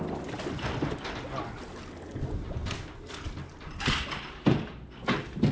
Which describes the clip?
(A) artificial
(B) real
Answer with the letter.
B